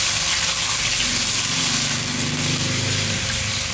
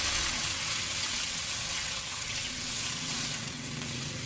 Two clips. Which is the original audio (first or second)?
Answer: first